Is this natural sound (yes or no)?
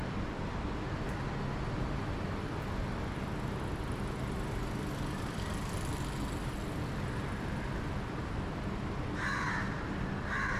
yes